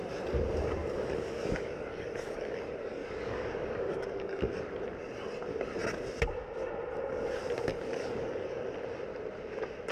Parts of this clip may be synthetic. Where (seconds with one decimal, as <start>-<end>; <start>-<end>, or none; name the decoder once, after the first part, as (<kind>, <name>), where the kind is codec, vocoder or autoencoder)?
0.8-4.7 (codec, DAC); 7.7-8.6